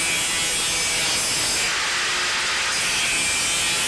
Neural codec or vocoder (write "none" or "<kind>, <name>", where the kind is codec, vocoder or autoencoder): none